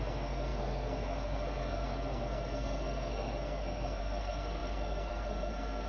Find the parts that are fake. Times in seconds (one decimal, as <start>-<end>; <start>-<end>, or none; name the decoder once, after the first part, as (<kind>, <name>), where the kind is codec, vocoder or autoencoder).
0.0-5.9 (codec, SNAC)